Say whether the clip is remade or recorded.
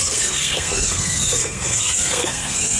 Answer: remade